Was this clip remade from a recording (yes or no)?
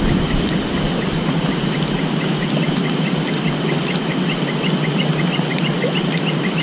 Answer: no